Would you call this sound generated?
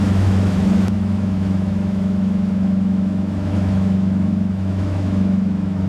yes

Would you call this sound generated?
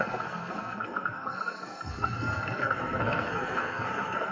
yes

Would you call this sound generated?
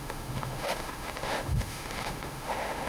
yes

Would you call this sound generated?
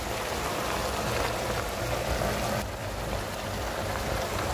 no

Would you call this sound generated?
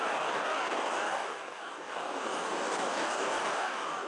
yes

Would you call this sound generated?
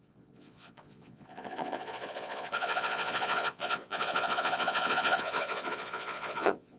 yes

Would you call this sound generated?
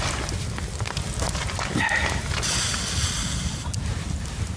no